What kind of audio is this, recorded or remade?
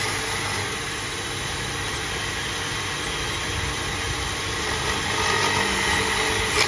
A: recorded